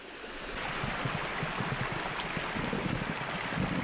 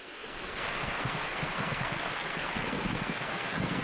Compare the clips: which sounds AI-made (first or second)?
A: second